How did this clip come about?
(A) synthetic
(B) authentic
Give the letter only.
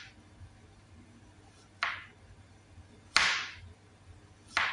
B